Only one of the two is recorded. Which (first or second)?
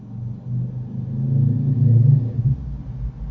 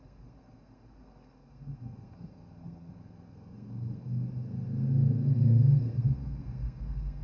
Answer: first